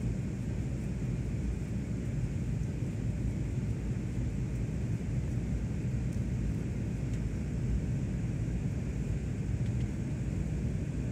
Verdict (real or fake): real